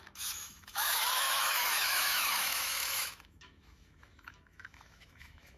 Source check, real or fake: fake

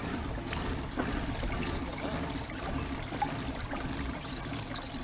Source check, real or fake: real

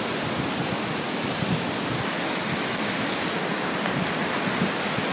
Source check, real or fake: real